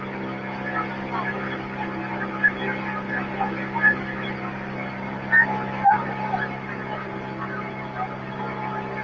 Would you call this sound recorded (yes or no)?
yes